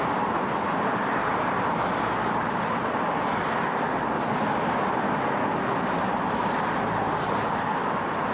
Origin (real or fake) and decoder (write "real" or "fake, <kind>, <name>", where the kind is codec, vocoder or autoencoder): real